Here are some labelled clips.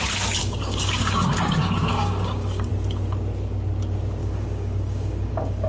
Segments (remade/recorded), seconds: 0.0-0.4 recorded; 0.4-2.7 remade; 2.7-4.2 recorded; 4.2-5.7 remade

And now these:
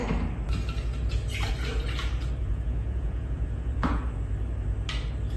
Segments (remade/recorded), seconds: 0.0-2.4 recorded; 2.4-4.2 remade; 4.2-5.4 recorded

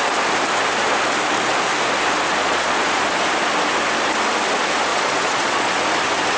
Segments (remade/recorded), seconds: 0.0-2.4 recorded; 2.4-3.0 remade; 3.0-4.9 recorded; 4.9-5.7 remade; 5.7-6.4 recorded

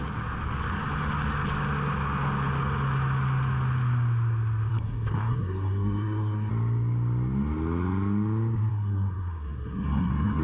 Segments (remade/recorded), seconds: 0.0-4.7 recorded; 4.7-6.5 remade; 6.5-8.7 recorded; 8.7-10.4 remade

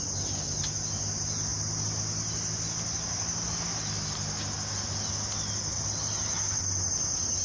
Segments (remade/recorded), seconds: 0.0-7.4 recorded